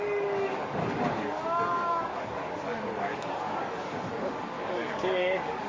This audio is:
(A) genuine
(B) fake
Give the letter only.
B